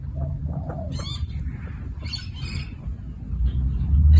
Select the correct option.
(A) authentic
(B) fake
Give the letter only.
A